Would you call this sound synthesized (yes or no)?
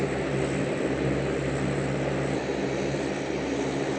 no